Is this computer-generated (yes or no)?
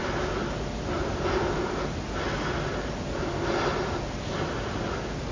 no